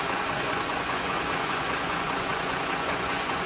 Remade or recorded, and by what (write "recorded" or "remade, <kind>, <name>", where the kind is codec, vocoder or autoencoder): remade, vocoder, Vocos